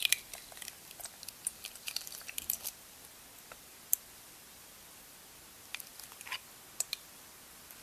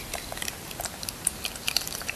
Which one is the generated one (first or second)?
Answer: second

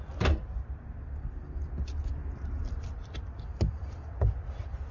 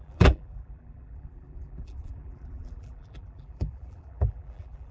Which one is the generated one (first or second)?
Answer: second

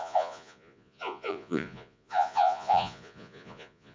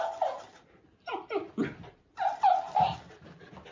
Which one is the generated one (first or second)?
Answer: first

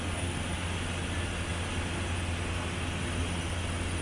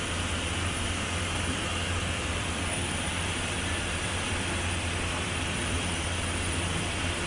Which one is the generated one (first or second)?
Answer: second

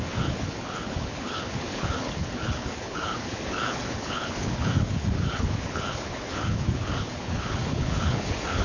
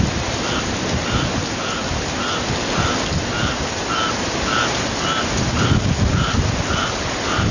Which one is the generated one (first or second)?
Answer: first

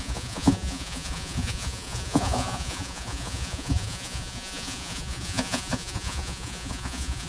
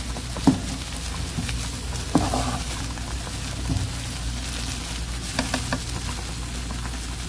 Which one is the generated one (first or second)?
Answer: first